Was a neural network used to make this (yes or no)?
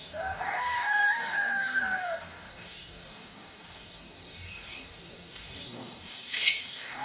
yes